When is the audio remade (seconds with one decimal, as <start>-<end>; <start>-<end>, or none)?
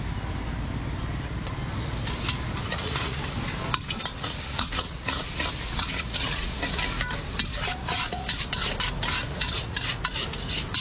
2.7-3.2; 4.1-6.8; 7.5-8.5; 9.3-9.8